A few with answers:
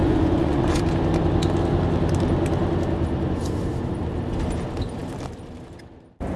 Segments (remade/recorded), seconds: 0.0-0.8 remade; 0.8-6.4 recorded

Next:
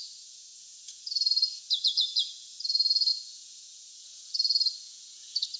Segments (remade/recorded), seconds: 0.0-5.6 remade

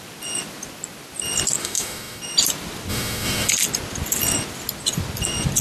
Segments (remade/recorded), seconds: 0.0-1.6 recorded; 1.6-2.2 remade; 2.2-2.9 recorded; 2.9-3.5 remade; 3.5-5.6 recorded